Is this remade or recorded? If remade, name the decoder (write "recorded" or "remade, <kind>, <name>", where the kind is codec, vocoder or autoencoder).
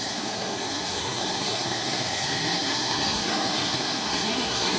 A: remade, codec, SNAC